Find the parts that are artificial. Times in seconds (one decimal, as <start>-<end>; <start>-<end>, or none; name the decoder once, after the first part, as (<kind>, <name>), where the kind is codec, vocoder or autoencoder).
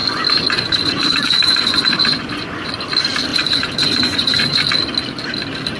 0.0-2.7 (vocoder, Vocos); 3.3-4.6